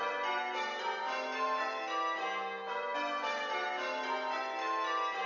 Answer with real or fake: real